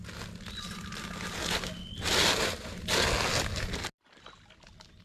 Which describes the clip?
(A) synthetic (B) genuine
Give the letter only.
B